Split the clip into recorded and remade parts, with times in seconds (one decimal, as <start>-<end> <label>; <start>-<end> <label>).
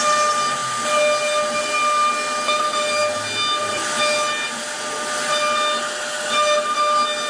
0.0-7.3 recorded